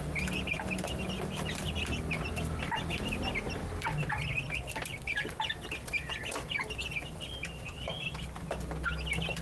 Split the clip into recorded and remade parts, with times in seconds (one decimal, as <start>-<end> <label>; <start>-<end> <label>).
0.0-9.4 recorded